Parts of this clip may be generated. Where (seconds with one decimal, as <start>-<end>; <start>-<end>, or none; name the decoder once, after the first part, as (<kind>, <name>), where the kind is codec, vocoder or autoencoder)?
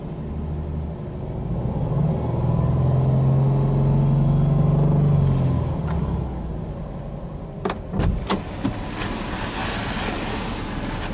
6.0-6.5 (codec, DAC)